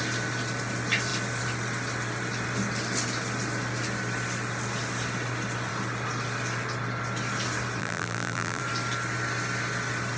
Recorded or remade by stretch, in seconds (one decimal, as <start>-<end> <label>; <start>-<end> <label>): 0.0-7.8 recorded; 7.8-8.6 remade; 8.6-10.2 recorded